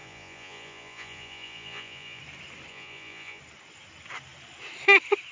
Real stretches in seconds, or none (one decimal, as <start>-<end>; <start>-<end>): 2.2-2.7; 3.4-5.3